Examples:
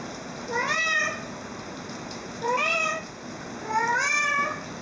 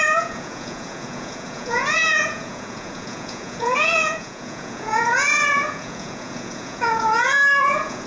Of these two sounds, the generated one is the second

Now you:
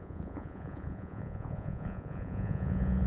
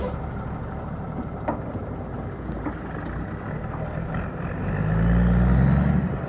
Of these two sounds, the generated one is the first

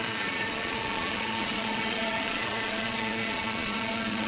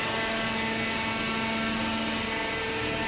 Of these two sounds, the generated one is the first